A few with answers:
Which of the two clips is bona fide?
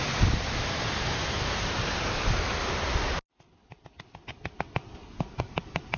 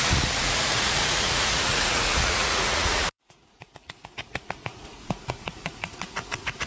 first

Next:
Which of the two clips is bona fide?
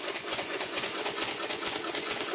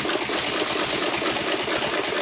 second